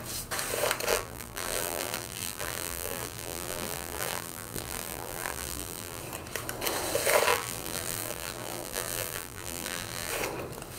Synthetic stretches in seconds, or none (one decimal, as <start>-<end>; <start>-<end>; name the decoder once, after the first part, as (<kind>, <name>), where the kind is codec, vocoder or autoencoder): 0.9-6.0 (vocoder, BigVGAN v2); 7.3-10.1